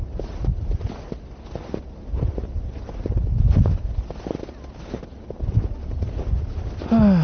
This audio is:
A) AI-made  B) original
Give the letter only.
B